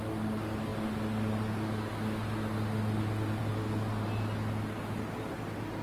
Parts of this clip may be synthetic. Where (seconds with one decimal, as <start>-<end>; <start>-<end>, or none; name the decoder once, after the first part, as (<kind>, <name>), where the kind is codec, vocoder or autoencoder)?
none